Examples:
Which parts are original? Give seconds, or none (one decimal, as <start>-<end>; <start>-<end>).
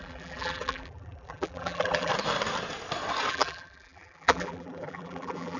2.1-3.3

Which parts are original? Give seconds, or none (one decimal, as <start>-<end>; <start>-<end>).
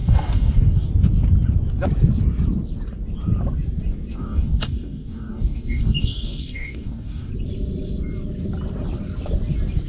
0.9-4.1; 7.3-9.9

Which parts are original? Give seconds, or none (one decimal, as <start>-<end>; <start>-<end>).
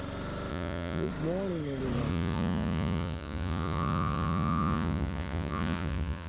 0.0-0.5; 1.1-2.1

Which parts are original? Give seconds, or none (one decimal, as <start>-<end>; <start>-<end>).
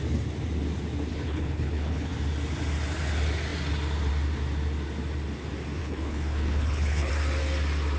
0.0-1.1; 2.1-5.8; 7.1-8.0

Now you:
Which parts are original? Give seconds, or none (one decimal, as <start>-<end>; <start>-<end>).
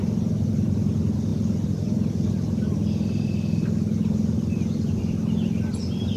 0.0-6.2